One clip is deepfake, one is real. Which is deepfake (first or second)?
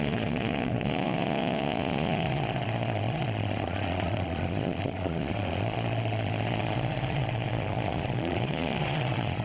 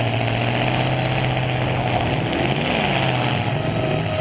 first